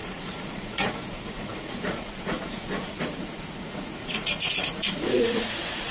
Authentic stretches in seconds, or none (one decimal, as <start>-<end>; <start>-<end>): none

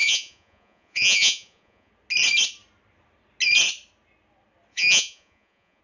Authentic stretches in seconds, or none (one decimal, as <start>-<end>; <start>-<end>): 1.9-4.7

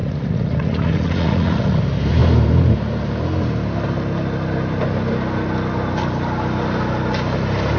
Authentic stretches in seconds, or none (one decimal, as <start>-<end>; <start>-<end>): 1.8-7.8

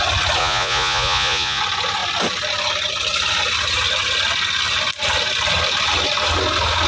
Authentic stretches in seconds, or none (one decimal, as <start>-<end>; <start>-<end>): 0.0-0.4; 1.6-6.9